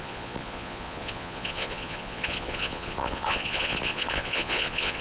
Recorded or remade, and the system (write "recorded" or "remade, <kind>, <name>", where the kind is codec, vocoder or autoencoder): remade, vocoder, Vocos